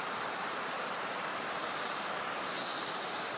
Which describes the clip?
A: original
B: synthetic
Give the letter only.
B